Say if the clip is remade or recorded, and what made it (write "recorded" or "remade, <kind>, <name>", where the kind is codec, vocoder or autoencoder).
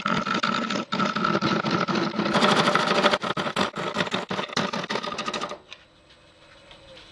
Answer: recorded